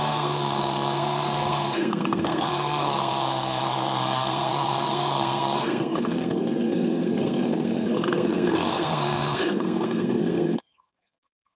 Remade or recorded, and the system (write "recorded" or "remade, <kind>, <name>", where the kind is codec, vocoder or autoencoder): remade, codec, SNAC